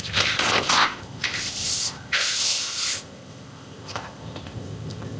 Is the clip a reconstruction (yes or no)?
yes